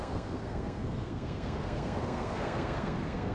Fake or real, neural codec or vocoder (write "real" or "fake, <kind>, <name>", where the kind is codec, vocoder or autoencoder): fake, codec, SNAC